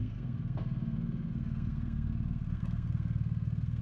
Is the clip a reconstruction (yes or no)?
yes